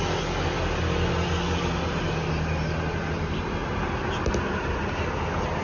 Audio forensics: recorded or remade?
recorded